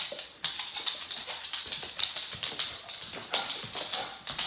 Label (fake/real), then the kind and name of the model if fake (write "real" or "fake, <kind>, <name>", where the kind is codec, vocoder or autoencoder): real